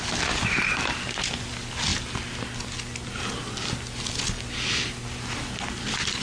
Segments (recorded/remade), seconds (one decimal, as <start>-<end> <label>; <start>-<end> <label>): 0.0-6.2 recorded